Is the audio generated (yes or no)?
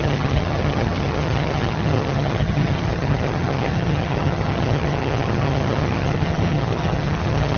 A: yes